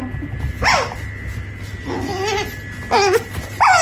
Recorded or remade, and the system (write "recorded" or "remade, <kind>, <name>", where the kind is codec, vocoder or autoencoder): recorded